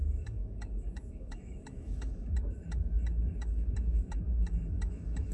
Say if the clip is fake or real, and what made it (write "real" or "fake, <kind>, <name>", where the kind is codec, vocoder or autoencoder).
fake, autoencoder, DAC-VAE